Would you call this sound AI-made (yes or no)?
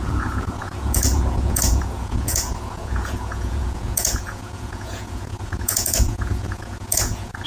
yes